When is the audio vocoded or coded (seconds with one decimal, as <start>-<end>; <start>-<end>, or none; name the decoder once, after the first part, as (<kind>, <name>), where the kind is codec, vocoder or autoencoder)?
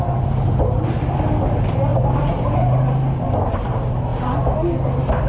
none